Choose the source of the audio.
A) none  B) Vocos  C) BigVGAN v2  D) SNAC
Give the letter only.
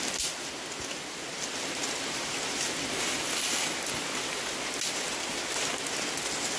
A